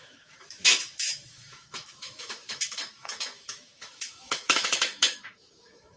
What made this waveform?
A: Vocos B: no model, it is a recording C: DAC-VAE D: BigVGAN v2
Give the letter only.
C